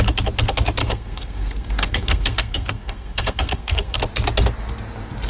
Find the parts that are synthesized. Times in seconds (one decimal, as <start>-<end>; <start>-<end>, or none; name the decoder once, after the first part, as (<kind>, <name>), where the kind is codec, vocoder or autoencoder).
0.8-4.0 (codec, SNAC)